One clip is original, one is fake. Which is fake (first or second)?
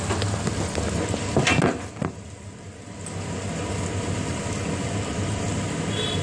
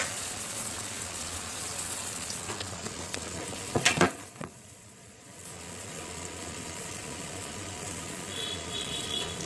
second